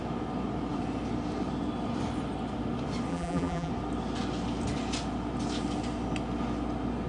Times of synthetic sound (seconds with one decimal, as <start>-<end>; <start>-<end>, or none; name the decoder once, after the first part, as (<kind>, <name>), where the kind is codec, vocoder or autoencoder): 3.1-3.7 (vocoder, BigVGAN v2)